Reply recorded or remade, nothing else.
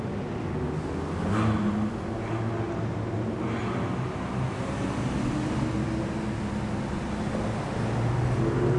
recorded